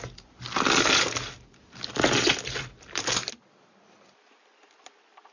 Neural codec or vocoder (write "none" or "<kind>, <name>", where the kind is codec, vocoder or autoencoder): none